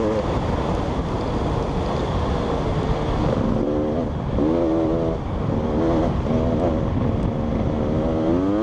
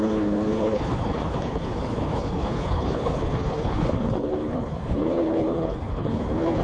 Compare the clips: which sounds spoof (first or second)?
second